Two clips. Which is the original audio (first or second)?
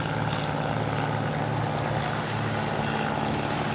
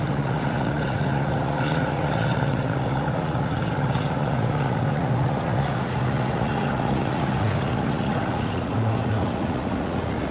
first